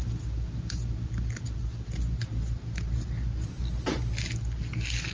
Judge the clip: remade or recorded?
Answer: recorded